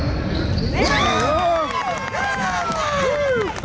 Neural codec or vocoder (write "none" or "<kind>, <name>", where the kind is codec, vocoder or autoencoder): none